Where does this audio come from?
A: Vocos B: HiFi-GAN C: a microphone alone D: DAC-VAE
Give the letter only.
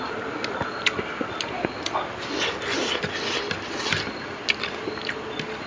C